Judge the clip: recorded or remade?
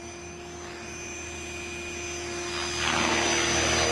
recorded